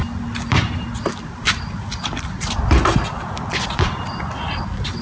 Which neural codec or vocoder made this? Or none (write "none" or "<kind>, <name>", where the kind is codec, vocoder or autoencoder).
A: vocoder, BigVGAN v2